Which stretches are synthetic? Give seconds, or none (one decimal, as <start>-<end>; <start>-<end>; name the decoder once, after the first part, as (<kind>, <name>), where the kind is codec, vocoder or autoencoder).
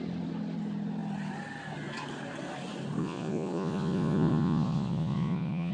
3.0-5.7 (vocoder, Vocos)